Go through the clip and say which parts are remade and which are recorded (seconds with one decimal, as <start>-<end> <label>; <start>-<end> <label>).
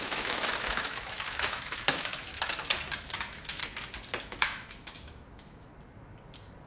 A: 0.0-2.3 remade; 2.3-3.0 recorded; 3.0-3.6 remade; 3.6-4.2 recorded; 4.2-5.7 remade; 5.7-6.7 recorded